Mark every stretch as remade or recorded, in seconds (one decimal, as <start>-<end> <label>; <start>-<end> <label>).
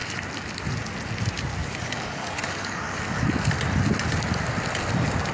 0.0-1.6 recorded; 1.6-3.2 remade; 3.2-5.3 recorded